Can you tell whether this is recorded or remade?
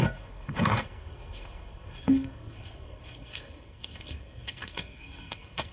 remade